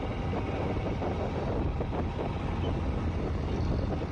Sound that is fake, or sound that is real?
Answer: real